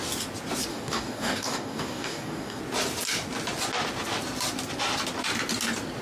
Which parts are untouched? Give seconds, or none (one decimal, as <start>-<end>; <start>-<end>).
0.0-0.7; 2.6-6.0